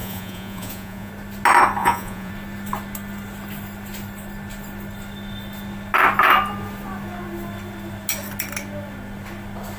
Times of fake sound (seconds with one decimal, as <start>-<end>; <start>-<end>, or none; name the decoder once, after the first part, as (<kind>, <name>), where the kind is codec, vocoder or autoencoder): 0.0-1.1 (vocoder, Vocos); 1.8-2.3